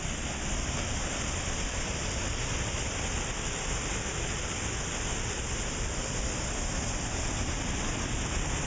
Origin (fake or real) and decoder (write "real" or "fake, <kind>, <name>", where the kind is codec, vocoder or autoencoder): fake, vocoder, BigVGAN v2